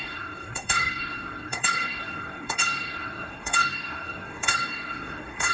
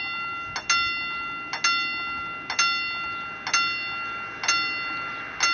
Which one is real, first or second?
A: second